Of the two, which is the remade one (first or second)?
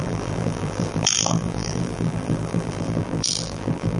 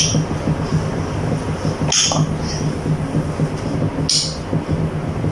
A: first